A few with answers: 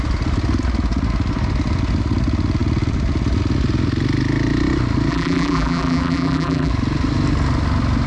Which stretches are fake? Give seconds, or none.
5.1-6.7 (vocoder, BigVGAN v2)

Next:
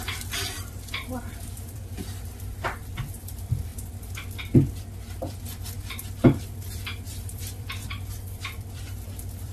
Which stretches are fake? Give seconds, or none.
0.0-3.7 (vocoder, BigVGAN v2); 6.1-9.5

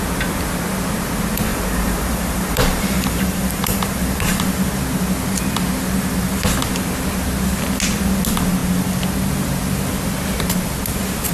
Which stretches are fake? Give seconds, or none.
1.5-4.7 (vocoder, BigVGAN v2)